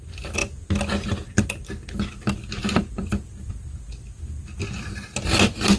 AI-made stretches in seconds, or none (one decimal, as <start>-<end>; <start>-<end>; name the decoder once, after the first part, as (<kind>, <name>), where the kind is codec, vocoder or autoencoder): 0.4-1.4 (vocoder, BigVGAN v2); 2.6-3.5